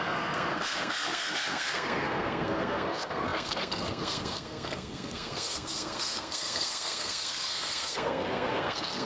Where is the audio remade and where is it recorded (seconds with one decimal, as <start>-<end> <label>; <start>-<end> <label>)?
0.0-9.1 remade